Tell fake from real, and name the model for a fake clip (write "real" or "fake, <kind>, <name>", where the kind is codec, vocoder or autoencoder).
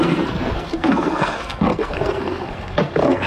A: fake, codec, SNAC